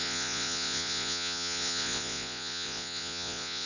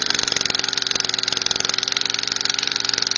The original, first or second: second